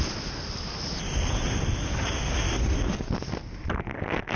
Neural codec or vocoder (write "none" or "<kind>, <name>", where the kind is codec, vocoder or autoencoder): none